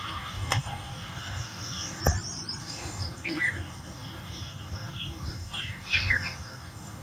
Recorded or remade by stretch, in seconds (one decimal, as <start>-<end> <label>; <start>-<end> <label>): 0.0-2.0 remade; 2.0-2.6 recorded; 2.6-7.0 remade